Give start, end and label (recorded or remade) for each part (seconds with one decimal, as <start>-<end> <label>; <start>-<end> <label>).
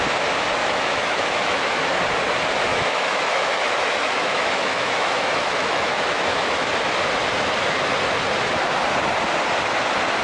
0.0-0.6 recorded; 0.6-2.0 remade; 2.0-2.7 recorded; 2.7-6.7 remade; 6.7-10.2 recorded